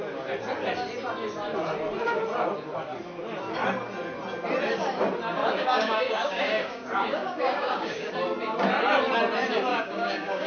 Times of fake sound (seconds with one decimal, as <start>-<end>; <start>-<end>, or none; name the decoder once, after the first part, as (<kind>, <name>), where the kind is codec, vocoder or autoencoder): 5.4-8.1 (codec, DAC); 9.7-10.5